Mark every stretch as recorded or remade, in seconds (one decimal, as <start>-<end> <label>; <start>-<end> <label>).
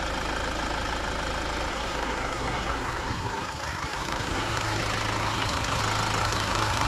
0.0-1.7 recorded; 1.7-4.8 remade; 4.8-5.2 recorded; 5.2-5.8 remade; 5.8-6.2 recorded; 6.2-6.9 remade